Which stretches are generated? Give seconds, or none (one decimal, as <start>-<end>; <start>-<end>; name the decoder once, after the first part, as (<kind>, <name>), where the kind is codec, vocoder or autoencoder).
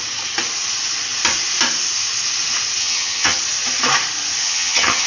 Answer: 2.8-3.4 (vocoder, HiFi-GAN); 4.4-5.1